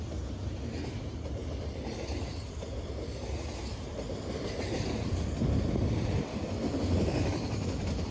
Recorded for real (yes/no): yes